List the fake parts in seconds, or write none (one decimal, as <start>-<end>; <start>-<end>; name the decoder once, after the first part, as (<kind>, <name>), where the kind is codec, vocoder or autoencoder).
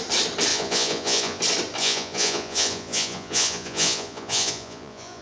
0.5-1.4 (vocoder, Vocos); 1.8-5.2